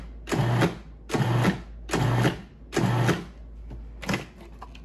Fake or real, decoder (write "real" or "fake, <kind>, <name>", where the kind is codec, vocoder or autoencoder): real